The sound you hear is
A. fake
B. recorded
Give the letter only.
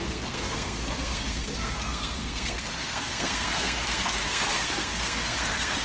A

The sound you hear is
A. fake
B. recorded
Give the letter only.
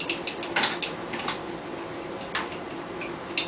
B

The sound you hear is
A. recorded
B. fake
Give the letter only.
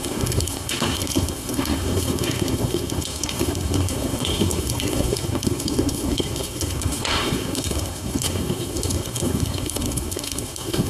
B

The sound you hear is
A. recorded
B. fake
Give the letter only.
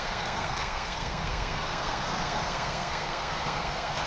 B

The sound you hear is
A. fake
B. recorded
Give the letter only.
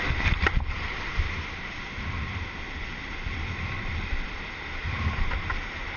B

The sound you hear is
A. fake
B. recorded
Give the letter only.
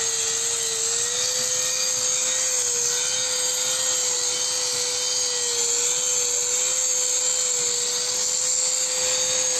B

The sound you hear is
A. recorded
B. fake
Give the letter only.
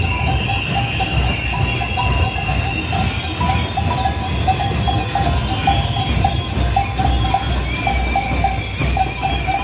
A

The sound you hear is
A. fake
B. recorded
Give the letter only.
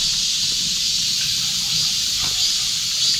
B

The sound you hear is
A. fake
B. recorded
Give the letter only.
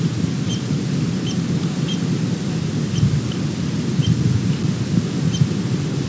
B